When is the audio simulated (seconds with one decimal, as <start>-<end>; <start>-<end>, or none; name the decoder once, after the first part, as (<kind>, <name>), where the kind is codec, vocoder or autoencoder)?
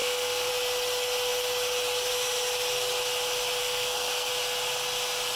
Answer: 0.0-0.5 (codec, SNAC); 3.6-4.3